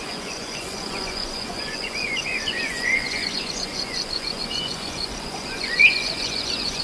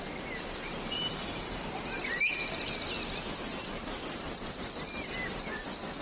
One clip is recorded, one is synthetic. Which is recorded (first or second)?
second